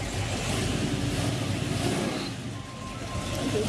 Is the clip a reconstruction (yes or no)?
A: no